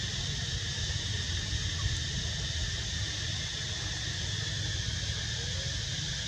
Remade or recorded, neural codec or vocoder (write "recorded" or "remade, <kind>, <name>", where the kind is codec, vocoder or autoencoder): recorded